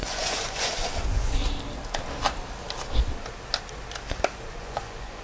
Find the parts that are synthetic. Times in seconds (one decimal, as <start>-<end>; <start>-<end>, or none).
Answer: 0.0-1.4; 4.5-5.2